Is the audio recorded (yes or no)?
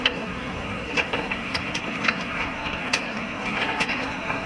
no